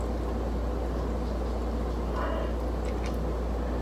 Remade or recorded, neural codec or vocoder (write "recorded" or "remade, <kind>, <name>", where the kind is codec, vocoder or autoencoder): recorded